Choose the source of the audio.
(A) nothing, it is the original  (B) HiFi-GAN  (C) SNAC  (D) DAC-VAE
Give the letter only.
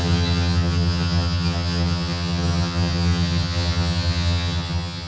B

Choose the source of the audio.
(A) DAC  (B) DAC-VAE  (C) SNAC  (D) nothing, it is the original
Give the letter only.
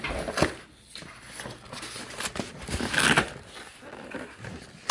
D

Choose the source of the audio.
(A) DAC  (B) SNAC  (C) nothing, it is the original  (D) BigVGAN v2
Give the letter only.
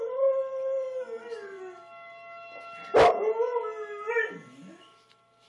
C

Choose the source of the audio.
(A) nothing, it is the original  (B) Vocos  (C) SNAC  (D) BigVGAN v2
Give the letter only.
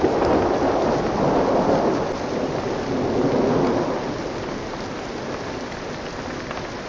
A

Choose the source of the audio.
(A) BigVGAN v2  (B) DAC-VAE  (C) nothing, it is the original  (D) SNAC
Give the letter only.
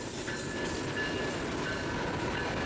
C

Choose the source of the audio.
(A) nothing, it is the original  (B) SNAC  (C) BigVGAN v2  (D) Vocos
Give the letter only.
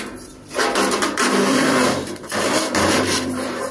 C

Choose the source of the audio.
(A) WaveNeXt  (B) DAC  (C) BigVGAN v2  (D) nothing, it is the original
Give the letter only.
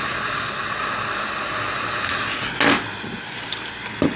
D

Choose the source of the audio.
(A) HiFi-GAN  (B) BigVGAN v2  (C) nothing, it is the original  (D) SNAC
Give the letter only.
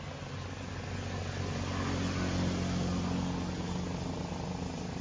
C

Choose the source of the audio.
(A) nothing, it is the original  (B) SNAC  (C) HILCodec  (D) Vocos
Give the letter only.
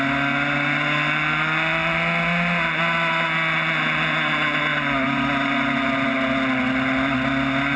A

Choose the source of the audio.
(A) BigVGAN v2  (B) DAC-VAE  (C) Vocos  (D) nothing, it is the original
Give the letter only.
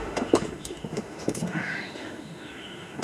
B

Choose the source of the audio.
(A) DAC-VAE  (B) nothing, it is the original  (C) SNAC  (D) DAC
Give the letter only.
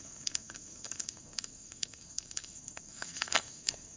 C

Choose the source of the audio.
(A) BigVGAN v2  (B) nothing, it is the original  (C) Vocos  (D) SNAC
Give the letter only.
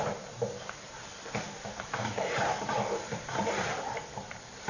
A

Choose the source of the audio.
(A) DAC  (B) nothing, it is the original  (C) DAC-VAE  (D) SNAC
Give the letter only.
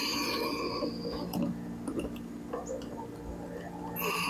B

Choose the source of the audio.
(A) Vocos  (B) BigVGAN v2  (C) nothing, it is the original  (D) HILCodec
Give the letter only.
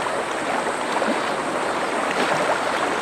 C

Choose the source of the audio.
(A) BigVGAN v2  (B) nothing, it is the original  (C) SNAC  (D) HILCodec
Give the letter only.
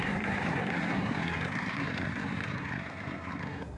C